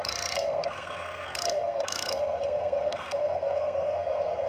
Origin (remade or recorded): remade